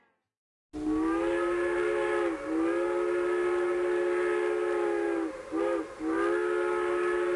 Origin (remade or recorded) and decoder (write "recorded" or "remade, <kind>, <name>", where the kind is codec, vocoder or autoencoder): recorded